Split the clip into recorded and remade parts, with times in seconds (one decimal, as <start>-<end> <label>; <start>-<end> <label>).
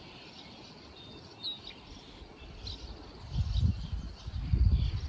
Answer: 0.0-5.1 recorded